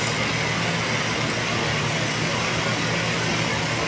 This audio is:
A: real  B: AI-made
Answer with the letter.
A